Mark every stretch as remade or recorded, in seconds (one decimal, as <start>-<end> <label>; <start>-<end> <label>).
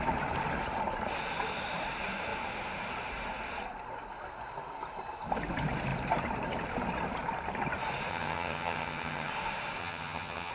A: 0.0-8.1 recorded; 8.1-9.3 remade; 9.3-9.8 recorded; 9.8-10.5 remade